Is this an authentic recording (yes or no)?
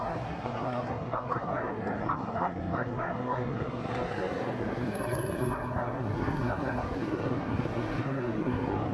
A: no